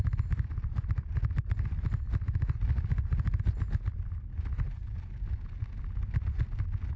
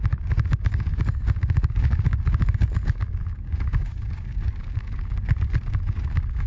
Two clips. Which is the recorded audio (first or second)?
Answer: first